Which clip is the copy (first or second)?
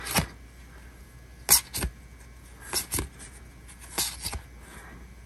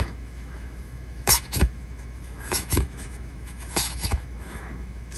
second